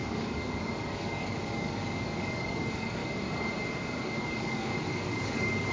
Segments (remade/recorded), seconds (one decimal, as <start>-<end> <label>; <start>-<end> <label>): 0.0-3.0 remade; 3.0-4.2 recorded; 4.2-5.7 remade